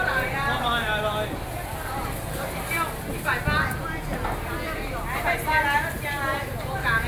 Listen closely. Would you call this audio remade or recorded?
recorded